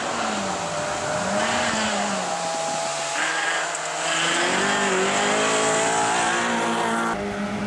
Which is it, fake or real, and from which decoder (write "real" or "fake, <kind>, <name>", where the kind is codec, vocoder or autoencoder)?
real